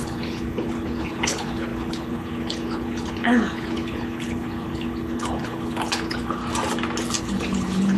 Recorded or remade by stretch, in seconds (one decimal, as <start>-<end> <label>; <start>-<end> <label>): 0.0-6.4 remade; 6.4-7.2 recorded; 7.2-8.0 remade